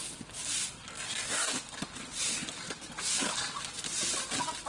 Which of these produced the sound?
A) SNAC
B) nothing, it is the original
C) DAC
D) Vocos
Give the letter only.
B